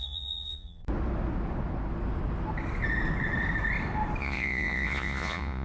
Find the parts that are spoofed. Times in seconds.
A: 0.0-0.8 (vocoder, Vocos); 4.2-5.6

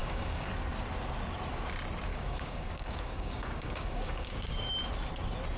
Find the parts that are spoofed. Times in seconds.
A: 0.0-0.5 (codec, DAC); 2.1-4.7